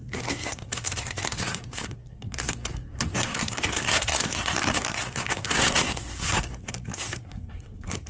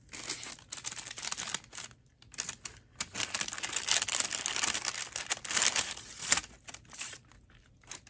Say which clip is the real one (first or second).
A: second